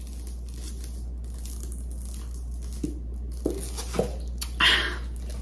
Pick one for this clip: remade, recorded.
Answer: recorded